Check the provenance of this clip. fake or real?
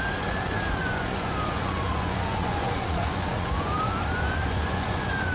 fake